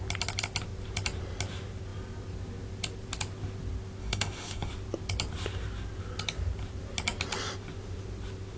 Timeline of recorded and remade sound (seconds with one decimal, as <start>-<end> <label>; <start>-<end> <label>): 0.0-4.0 recorded; 4.0-4.7 remade; 4.7-8.6 recorded